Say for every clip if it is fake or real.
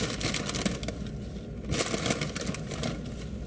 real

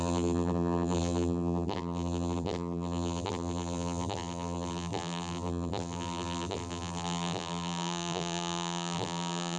fake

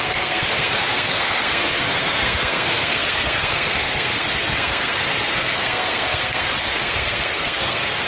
fake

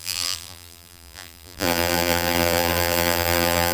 fake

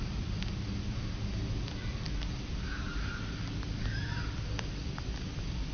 real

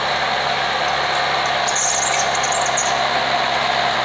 real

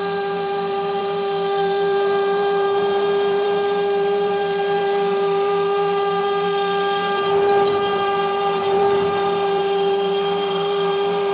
fake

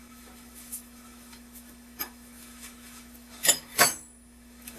fake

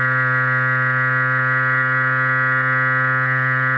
real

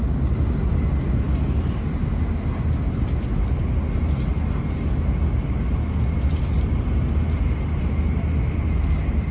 real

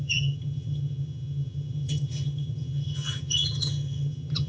fake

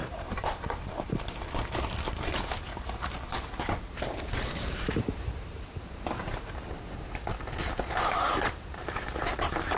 fake